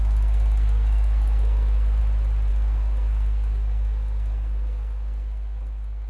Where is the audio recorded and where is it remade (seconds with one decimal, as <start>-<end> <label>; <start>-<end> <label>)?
0.0-2.0 remade; 2.0-2.5 recorded; 2.5-6.1 remade